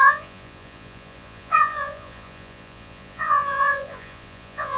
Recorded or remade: remade